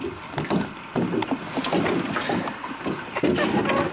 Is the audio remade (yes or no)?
no